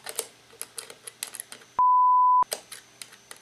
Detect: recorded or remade recorded